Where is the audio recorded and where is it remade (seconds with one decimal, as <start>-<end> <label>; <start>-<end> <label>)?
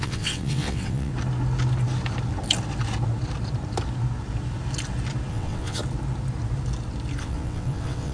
0.0-1.1 remade; 1.1-5.3 recorded; 5.3-5.8 remade; 5.8-7.2 recorded; 7.2-8.1 remade